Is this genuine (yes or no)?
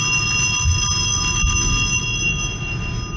yes